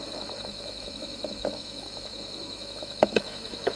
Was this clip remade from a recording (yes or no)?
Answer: yes